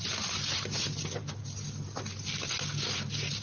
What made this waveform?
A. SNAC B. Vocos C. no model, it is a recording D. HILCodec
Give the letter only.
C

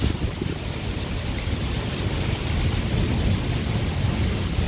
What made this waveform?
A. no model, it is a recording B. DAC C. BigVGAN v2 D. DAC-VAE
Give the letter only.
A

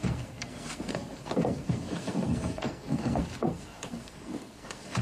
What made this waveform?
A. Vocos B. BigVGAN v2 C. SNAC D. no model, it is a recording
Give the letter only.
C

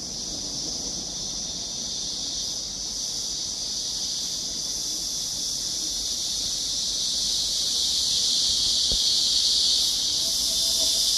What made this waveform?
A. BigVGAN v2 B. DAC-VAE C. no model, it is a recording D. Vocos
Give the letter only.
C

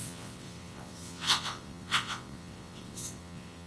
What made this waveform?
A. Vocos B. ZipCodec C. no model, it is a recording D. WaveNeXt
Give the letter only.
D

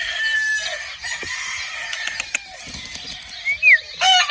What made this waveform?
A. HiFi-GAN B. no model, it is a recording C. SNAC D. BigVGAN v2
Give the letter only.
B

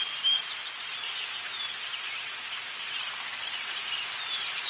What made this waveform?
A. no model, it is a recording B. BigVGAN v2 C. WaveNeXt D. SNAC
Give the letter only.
A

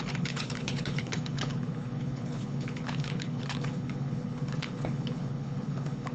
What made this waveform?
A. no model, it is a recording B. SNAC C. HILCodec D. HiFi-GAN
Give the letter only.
C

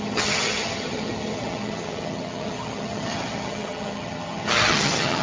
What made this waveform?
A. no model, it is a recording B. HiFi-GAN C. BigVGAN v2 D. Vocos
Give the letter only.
B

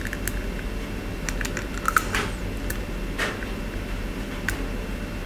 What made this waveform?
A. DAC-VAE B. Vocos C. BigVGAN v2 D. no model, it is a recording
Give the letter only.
D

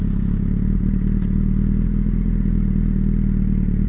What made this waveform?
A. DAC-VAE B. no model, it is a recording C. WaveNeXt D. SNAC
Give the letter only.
B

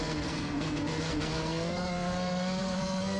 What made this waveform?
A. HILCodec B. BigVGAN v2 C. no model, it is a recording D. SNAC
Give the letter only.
D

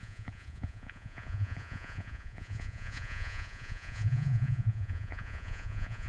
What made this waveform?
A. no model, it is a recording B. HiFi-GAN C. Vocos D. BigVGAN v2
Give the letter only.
C